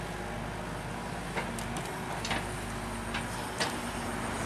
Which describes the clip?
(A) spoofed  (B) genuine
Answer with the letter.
B